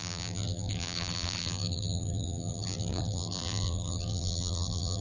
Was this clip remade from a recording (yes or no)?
yes